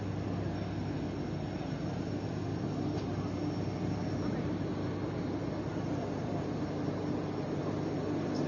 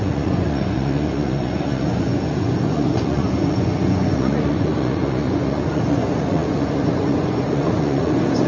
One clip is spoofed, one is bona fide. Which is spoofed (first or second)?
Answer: second